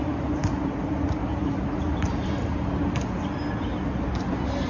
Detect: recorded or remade recorded